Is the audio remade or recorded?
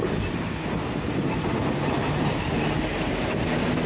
recorded